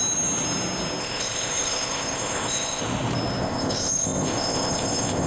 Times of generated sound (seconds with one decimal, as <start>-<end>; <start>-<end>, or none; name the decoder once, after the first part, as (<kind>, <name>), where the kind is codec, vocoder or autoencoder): 1.0-2.8 (codec, ZipCodec); 3.4-5.3